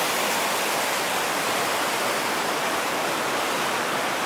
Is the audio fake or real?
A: real